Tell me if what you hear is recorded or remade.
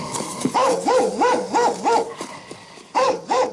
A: remade